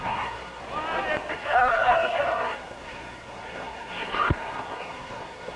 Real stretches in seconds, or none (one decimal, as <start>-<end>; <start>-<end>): 0.6-1.3